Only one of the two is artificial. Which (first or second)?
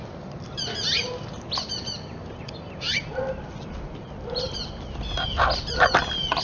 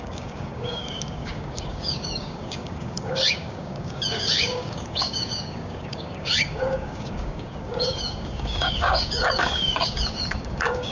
second